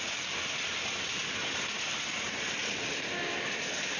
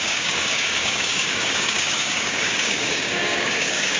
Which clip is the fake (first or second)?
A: second